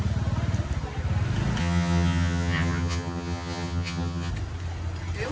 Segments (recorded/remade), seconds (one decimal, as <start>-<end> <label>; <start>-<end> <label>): 0.0-1.6 recorded; 1.6-4.3 remade; 4.3-5.3 recorded